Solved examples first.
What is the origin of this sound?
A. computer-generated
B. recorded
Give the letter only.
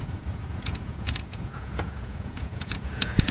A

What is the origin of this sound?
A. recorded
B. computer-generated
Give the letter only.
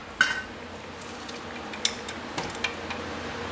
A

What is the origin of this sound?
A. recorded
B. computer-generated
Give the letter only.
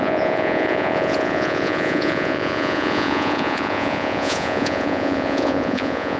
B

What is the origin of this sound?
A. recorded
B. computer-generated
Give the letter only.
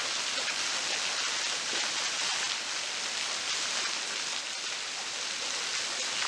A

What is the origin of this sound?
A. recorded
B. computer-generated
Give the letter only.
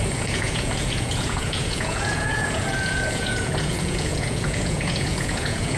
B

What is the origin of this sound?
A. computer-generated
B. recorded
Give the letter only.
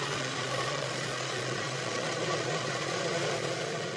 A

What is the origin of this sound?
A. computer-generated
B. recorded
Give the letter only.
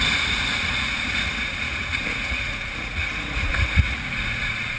A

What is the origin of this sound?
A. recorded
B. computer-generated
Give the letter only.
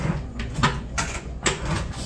B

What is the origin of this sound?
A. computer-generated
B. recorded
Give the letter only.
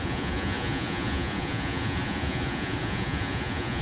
A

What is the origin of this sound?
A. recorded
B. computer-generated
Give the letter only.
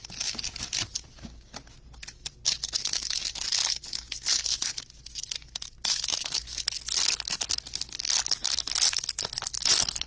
A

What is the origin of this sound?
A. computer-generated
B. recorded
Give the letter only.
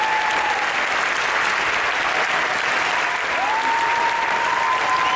B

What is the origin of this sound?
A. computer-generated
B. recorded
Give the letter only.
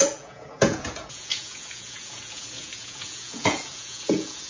A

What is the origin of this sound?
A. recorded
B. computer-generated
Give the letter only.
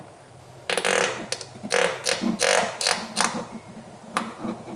A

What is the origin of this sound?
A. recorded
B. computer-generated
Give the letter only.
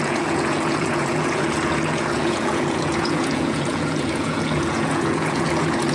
B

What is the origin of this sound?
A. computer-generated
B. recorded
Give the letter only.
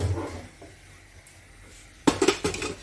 B